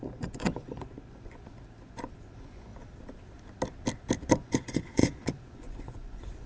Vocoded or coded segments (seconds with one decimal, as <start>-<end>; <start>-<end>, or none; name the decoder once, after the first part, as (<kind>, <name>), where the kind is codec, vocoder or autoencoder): 0.0-2.7 (vocoder, Vocos); 4.3-6.5

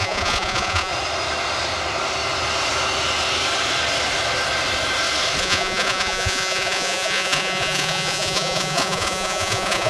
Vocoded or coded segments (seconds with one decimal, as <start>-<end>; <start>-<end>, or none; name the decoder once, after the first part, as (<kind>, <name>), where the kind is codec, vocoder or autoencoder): 0.0-0.9 (vocoder, Vocos); 5.4-9.9

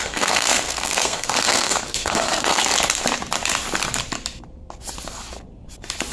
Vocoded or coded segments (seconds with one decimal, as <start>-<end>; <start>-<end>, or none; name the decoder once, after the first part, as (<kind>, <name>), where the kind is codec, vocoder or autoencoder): 0.0-2.7 (codec, SNAC)

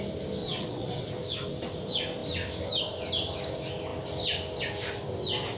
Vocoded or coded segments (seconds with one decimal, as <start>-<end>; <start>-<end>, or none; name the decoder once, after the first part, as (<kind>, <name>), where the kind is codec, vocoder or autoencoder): 0.4-1.1 (vocoder, WaveNeXt)

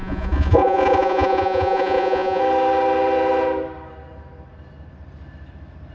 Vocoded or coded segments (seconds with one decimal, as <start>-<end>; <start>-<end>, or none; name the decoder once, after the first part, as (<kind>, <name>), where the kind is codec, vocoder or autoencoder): 0.0-2.4 (vocoder, Vocos)

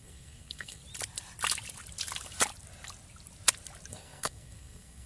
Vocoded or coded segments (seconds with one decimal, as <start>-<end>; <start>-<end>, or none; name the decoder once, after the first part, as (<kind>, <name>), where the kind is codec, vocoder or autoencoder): 0.0-0.8 (codec, SNAC); 3.9-5.1

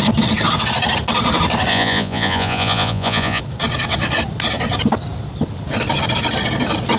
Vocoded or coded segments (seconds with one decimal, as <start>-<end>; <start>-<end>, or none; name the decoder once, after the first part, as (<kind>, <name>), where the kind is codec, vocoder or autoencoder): 1.7-3.4 (vocoder, Vocos)

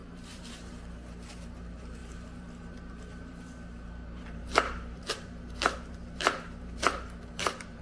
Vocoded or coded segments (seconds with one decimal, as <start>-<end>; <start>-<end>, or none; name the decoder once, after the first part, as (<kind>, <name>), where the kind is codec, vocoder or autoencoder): 0.0-7.8 (vocoder, BigVGAN v2)